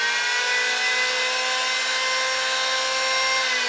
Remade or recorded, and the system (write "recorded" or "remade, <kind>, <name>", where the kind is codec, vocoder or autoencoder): recorded